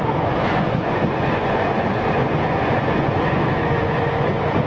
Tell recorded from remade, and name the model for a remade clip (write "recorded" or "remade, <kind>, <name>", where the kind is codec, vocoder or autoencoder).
remade, vocoder, Vocos